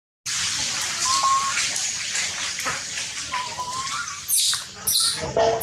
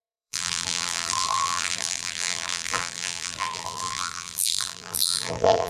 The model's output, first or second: second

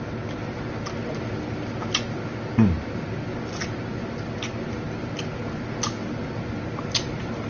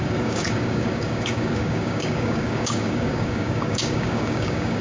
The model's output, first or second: second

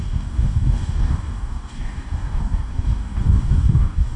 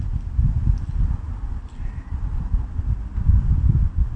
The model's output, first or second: first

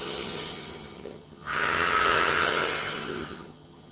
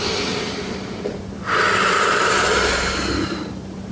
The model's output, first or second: first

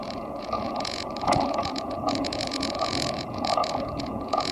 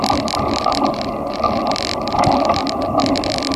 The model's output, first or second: first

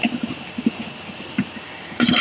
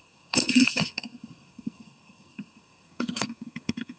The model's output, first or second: second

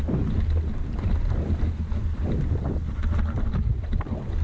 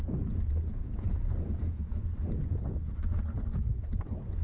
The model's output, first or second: second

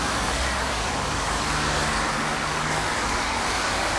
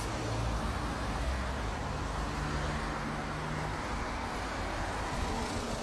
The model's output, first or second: first